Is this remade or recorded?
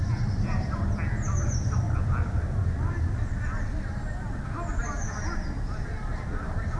recorded